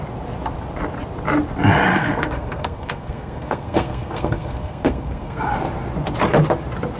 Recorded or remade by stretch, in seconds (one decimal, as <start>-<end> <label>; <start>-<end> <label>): 0.0-1.9 recorded; 1.9-5.4 remade; 5.4-7.0 recorded